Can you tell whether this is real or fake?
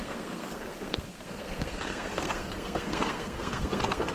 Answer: fake